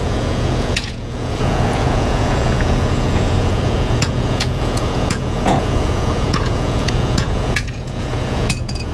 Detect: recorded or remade remade